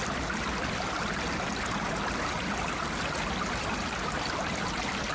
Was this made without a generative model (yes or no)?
yes